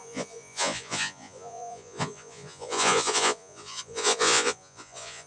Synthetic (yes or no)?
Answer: yes